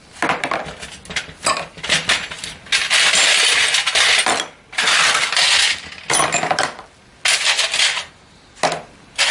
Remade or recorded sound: recorded